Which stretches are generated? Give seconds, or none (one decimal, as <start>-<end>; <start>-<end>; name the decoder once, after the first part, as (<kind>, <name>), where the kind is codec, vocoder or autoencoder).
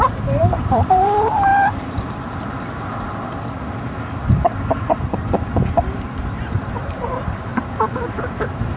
0.0-1.5 (vocoder, BigVGAN v2); 6.2-7.5; 8.0-8.8